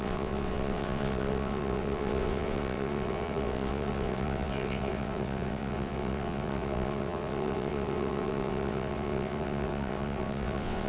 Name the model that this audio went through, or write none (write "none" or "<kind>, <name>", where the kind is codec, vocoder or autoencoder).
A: vocoder, WaveNeXt